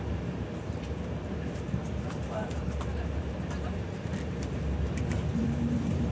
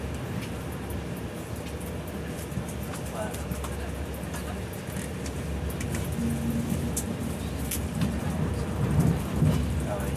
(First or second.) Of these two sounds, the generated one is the first